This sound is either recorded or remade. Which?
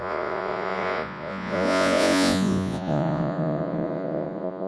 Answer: remade